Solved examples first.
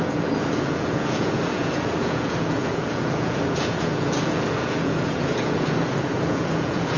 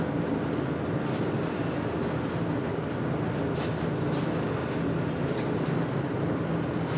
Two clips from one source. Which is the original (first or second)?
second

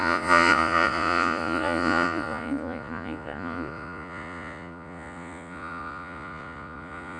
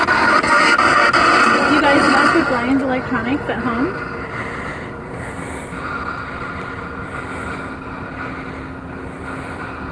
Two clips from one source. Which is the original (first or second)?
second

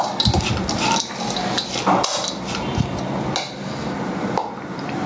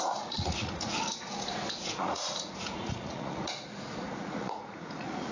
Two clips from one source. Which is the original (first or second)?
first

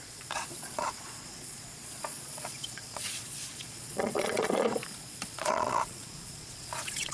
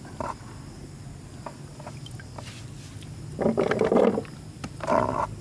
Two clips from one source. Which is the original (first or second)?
second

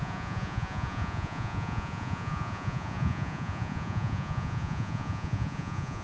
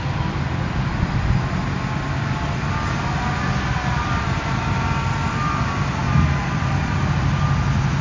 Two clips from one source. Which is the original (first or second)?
second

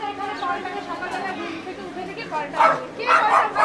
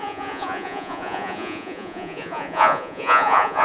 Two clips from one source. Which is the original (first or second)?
first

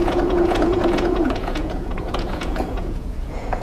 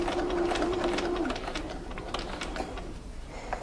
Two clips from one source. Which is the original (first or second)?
second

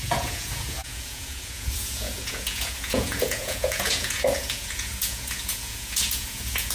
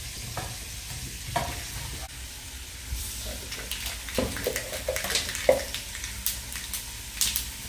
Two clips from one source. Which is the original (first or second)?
second